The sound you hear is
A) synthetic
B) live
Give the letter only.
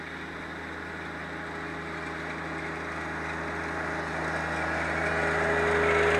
B